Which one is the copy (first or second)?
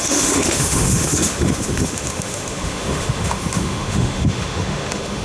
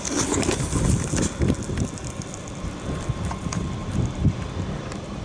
first